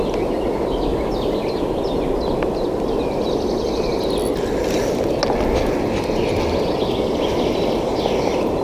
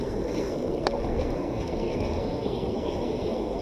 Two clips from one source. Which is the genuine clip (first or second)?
first